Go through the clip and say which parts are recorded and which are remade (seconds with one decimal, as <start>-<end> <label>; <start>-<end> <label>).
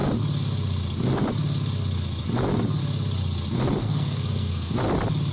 0.0-3.8 recorded; 3.8-4.7 remade; 4.7-5.3 recorded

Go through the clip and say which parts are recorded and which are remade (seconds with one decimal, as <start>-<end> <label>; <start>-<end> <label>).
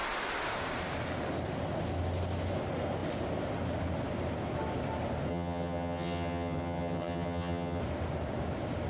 0.0-5.3 recorded; 5.3-7.8 remade; 7.8-8.9 recorded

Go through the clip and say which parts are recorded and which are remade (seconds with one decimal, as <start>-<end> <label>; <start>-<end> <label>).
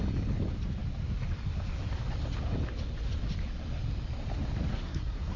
0.0-4.7 recorded; 4.7-5.4 remade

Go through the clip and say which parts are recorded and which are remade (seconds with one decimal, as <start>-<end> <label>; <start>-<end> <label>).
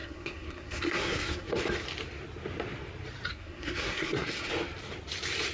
0.0-1.6 remade; 1.6-3.3 recorded; 3.3-4.5 remade; 4.5-5.5 recorded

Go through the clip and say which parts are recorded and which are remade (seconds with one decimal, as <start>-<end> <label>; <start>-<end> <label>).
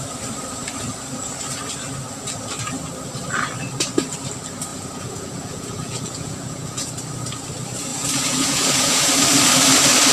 0.0-4.7 recorded; 4.7-6.9 remade; 6.9-7.9 recorded; 7.9-9.1 remade; 9.1-10.1 recorded